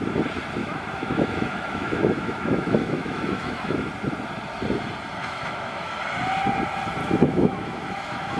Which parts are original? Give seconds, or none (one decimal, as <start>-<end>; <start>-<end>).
0.0-0.6; 3.9-5.2; 5.9-7.0